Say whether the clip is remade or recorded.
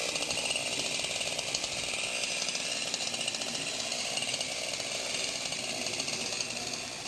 recorded